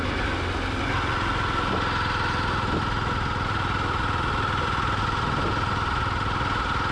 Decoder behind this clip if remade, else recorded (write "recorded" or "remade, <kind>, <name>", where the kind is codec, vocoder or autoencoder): recorded